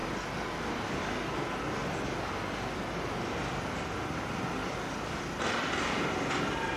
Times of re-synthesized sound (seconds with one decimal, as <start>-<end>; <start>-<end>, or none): none